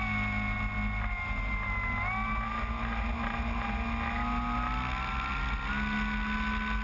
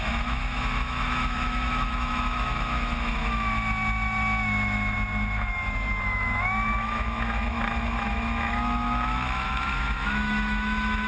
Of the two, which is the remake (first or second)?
second